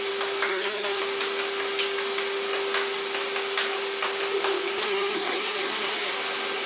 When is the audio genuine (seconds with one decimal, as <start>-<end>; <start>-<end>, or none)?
0.0-0.5; 1.0-4.8; 6.1-6.7